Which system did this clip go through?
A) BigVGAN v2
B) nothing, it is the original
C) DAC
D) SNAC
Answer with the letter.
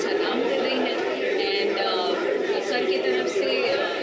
B